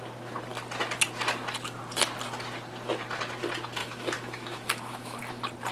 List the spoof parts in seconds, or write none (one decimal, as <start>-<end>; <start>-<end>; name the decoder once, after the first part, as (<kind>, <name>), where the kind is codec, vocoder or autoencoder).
3.8-5.2 (autoencoder, DAC-VAE)